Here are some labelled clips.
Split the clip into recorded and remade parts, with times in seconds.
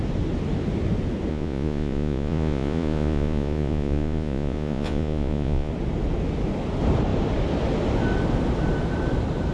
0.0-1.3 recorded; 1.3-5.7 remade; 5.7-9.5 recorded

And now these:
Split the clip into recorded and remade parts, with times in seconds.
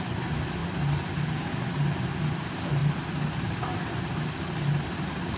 0.0-5.4 recorded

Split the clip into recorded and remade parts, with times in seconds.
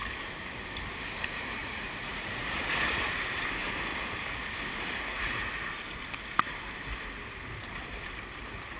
0.0-1.6 recorded; 1.6-3.4 remade; 3.4-5.1 recorded; 5.1-5.8 remade; 5.8-8.8 recorded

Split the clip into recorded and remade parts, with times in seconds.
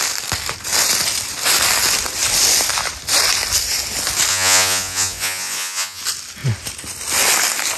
0.0-4.3 recorded; 4.3-6.0 remade; 6.0-7.8 recorded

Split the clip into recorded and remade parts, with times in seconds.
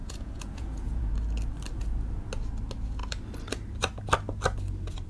0.0-1.1 remade; 1.1-5.1 recorded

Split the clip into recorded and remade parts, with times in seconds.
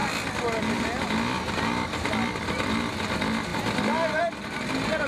0.0-5.1 recorded